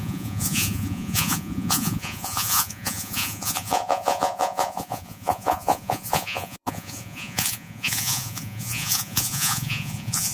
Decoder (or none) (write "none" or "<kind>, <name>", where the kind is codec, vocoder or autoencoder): vocoder, Vocos